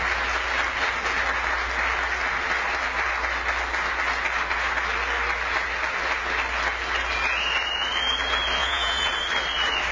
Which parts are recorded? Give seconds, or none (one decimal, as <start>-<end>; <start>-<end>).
0.0-8.6; 9.1-9.9